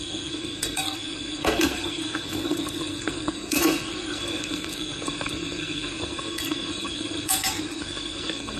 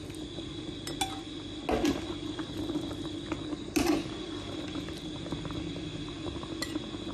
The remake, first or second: first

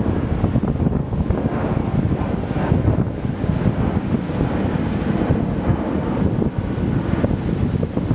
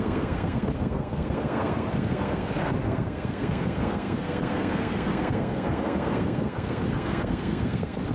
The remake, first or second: second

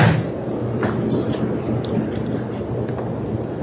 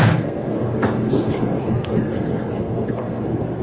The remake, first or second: second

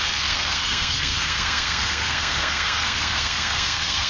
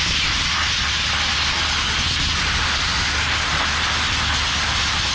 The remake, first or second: first